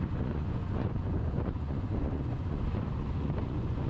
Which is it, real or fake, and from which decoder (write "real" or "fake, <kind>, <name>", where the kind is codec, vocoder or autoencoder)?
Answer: fake, vocoder, Vocos